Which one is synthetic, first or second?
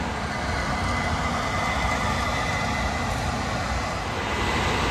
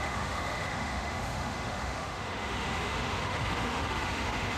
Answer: second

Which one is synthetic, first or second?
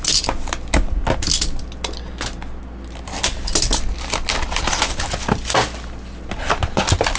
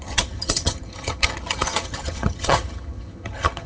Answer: second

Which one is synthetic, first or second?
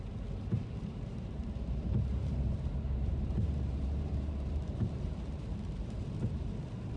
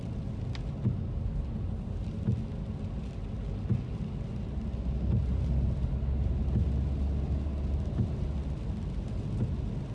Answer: first